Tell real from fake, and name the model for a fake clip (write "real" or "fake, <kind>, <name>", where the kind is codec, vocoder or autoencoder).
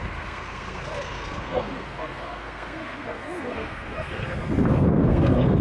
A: fake, codec, SNAC